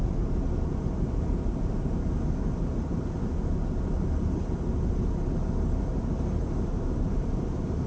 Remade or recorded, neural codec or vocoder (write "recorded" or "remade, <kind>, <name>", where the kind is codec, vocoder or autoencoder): recorded